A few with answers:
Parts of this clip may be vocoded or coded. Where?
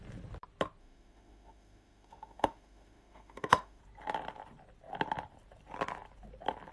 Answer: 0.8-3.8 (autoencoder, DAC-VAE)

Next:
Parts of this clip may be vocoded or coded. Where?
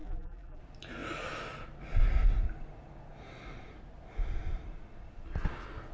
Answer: 0.0-0.6 (vocoder, BigVGAN v2)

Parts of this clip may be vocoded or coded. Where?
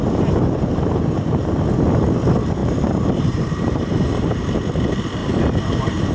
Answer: 0.7-1.5 (vocoder, BigVGAN v2); 2.6-4.5; 5.2-6.1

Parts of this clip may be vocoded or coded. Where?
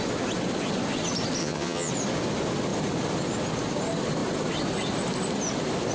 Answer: 1.4-1.9 (vocoder, HiFi-GAN)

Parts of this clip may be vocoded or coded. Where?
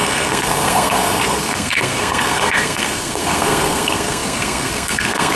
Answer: 0.0-5.4 (codec, SNAC)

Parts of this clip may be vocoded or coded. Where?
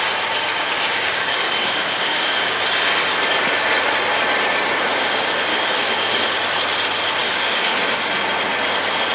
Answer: 0.5-2.6 (codec, DAC); 5.5-6.2; 7.2-8.1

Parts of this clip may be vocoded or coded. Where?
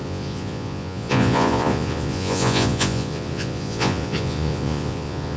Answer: 0.0-5.4 (vocoder, Vocos)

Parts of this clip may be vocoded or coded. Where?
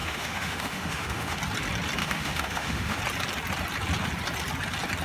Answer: 0.0-1.4 (autoencoder, DAC-VAE); 2.0-3.0